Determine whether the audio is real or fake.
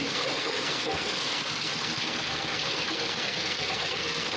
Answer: fake